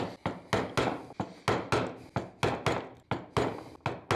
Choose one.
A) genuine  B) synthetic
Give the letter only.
A